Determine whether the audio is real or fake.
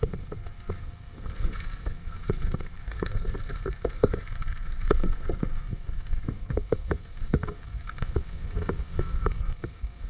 fake